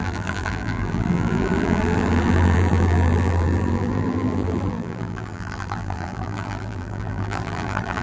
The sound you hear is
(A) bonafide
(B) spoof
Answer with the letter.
B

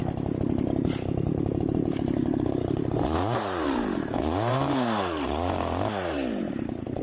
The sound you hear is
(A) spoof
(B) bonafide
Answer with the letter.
A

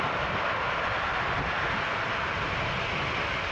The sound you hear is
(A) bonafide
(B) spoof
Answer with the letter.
A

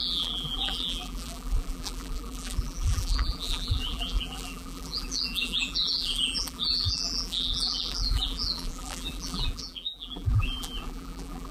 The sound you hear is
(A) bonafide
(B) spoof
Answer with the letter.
B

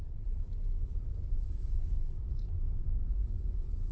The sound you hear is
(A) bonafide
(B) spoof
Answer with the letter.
B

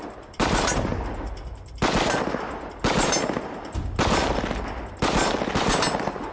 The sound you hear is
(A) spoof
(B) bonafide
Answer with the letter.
B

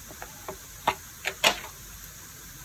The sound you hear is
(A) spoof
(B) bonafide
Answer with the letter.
B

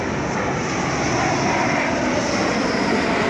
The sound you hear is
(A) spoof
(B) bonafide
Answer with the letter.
B